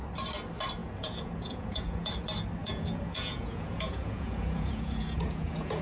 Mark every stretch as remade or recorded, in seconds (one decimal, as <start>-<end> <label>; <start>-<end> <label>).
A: 0.0-0.8 recorded; 0.8-2.2 remade; 2.2-2.6 recorded; 2.6-5.8 remade